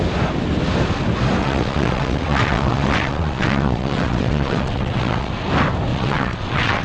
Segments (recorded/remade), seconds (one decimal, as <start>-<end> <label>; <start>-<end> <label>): 0.0-1.4 recorded; 1.4-5.3 remade; 5.3-5.9 recorded; 5.9-6.8 remade